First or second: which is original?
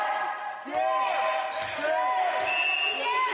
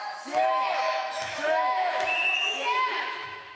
first